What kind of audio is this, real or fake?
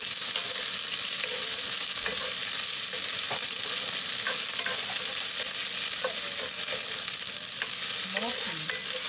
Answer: real